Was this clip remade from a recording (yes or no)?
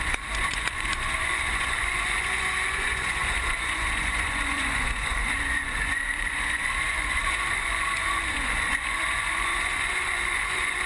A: yes